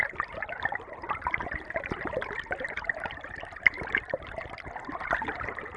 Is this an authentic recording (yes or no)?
no